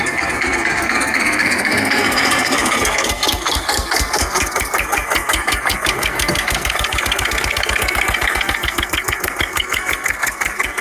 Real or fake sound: fake